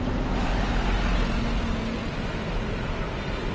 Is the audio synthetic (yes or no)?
no